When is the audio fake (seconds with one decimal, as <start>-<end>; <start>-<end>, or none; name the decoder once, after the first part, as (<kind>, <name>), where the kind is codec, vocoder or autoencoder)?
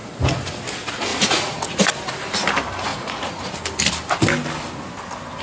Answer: 1.1-1.9 (vocoder, Vocos); 2.9-3.5